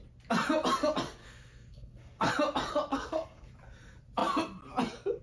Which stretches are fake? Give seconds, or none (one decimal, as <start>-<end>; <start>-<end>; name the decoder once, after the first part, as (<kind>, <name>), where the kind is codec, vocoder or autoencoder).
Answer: 1.2-2.3 (codec, SNAC); 2.9-3.5